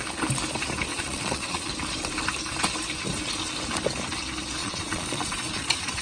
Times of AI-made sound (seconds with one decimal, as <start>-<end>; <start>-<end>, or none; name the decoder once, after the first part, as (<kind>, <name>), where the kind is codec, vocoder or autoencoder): 0.9-1.7 (vocoder, Vocos); 4.6-6.0